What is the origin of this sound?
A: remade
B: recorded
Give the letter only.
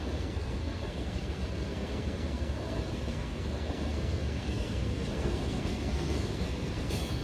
A